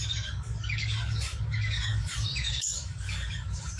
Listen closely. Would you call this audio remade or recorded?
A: remade